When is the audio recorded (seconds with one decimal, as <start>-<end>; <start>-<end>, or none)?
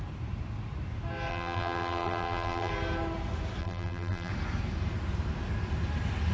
0.0-1.3; 2.7-3.6; 4.3-6.3